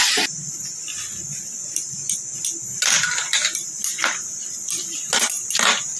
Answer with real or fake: real